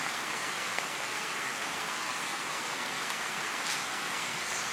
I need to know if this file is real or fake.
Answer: fake